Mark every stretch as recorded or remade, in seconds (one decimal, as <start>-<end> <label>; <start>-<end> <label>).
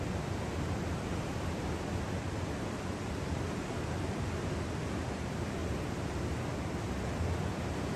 0.0-5.6 remade; 5.6-7.3 recorded; 7.3-8.0 remade